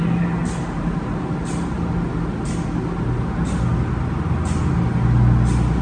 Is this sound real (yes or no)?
yes